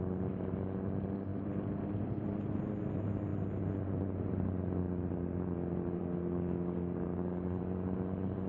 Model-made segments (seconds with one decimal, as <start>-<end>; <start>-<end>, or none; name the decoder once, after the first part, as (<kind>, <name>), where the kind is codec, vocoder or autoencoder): 6.0-7.6 (codec, DAC)